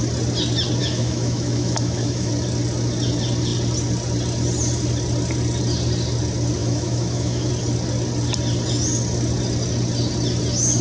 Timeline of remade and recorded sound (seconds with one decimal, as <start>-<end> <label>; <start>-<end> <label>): 0.0-0.8 recorded; 0.8-2.3 remade; 2.3-6.6 recorded; 6.6-7.5 remade; 7.5-10.8 recorded